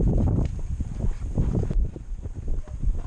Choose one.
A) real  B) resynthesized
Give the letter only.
A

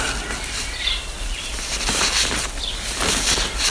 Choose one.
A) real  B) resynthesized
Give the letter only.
A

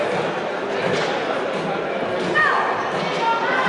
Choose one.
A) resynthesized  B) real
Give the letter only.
B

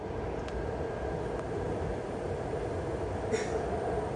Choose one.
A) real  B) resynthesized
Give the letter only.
A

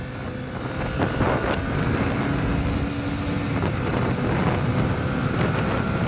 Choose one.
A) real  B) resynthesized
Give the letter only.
A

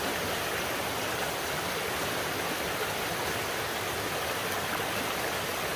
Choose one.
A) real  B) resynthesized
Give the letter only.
A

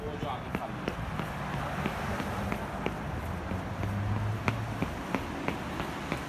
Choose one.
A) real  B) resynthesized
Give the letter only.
A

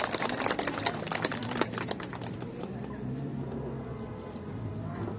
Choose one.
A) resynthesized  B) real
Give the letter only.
A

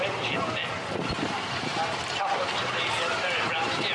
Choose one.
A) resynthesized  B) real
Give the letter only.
A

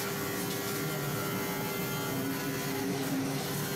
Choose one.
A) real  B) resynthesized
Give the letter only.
A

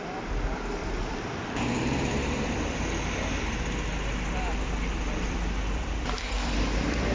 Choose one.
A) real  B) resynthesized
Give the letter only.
B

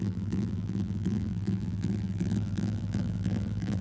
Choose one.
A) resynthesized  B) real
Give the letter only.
A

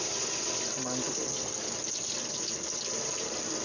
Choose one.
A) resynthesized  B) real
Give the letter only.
B